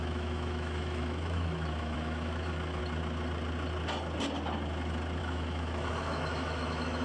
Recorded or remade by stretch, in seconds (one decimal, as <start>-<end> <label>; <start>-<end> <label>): 0.0-2.8 remade; 2.8-5.2 recorded; 5.2-7.0 remade